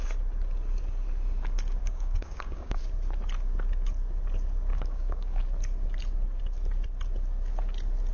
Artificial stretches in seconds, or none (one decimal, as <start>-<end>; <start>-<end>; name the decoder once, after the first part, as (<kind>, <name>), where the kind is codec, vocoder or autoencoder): 1.8-2.8 (codec, DAC); 4.7-5.4